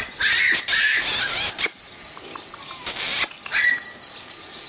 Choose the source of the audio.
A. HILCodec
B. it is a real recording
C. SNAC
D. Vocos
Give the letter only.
B